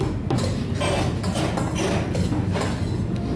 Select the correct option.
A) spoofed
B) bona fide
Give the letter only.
B